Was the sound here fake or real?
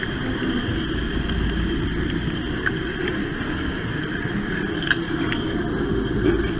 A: real